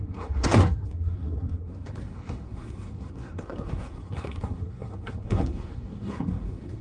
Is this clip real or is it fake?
fake